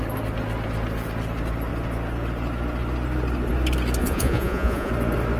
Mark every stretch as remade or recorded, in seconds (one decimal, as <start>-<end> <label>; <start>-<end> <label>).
0.0-4.0 recorded; 4.0-4.9 remade; 4.9-5.4 recorded